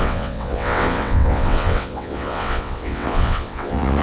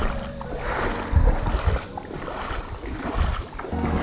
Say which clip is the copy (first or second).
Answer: first